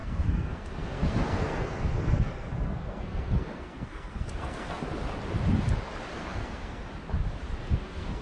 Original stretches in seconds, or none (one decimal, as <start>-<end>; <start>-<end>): 4.8-6.2; 6.9-7.6